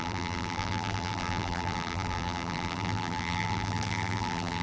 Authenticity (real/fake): fake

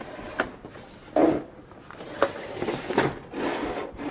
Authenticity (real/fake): real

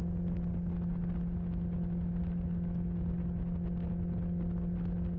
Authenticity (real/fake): real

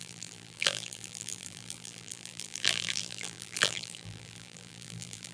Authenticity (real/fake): fake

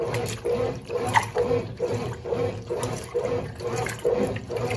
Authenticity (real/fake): fake